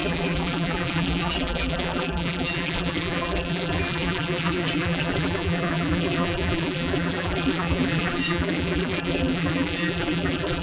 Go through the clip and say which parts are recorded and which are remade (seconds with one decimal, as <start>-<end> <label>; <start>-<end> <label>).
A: 0.0-10.6 remade